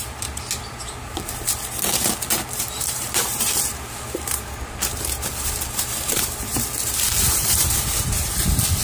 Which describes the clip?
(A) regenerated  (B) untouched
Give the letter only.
A